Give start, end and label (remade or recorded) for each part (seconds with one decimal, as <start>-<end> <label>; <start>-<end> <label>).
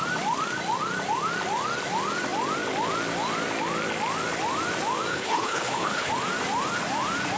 0.0-5.1 recorded; 5.1-6.1 remade; 6.1-7.4 recorded